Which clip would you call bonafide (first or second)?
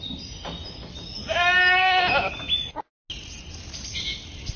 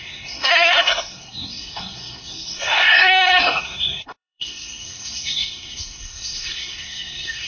first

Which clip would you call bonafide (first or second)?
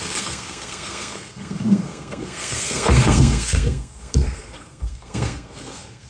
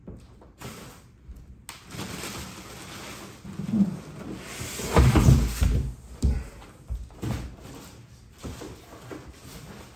second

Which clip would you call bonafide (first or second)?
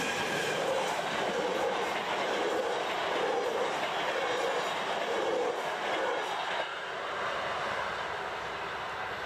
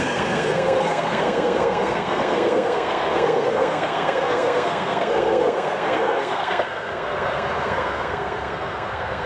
first